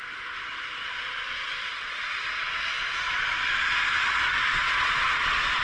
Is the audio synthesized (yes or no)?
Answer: yes